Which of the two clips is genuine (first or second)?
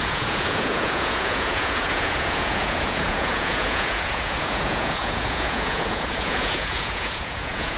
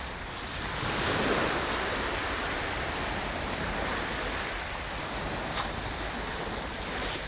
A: second